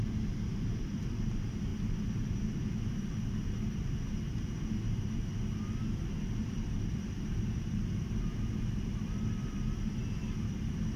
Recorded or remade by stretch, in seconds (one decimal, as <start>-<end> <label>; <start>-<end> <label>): 0.0-1.7 remade; 1.7-6.1 recorded; 6.1-11.0 remade